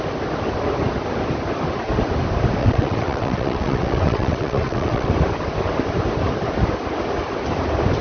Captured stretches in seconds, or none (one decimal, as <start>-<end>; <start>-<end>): 0.0-2.6; 5.1-8.0